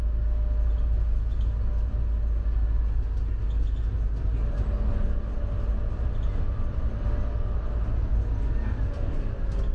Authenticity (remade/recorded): recorded